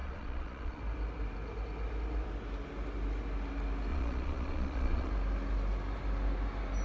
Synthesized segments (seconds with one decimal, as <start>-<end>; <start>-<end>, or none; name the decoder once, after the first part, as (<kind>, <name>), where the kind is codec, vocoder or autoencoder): 0.0-0.8 (vocoder, Vocos); 3.9-5.1